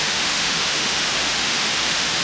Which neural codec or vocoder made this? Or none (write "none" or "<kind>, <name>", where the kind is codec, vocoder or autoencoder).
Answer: autoencoder, DAC-VAE